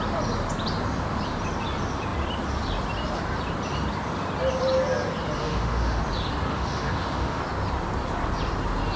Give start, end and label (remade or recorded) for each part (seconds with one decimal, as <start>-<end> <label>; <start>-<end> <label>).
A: 0.0-5.4 recorded; 5.4-6.0 remade; 6.0-6.5 recorded; 6.5-7.4 remade; 7.4-9.0 recorded